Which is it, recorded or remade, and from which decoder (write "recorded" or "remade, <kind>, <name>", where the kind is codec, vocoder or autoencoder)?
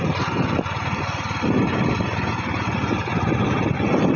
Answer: recorded